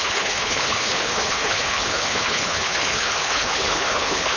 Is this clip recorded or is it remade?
remade